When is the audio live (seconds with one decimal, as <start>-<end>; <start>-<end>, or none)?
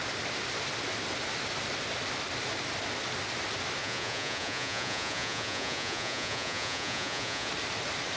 0.0-3.8; 7.5-8.2